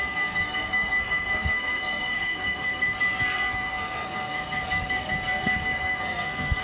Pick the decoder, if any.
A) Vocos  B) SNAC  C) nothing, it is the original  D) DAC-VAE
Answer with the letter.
B